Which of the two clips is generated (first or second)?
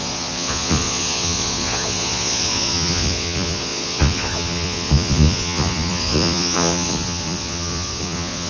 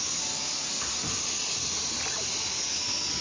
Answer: first